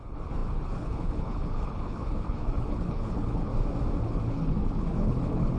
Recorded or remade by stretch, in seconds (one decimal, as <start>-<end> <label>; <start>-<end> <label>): 0.0-3.5 remade; 3.5-4.0 recorded; 4.0-5.6 remade